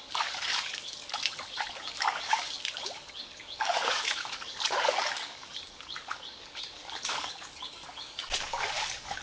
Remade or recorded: remade